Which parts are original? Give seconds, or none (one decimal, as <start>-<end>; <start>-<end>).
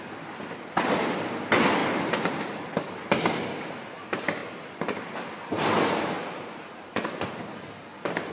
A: 0.0-1.8; 3.4-6.2; 6.9-8.3